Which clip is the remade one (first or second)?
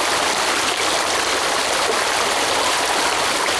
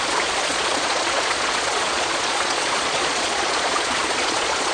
second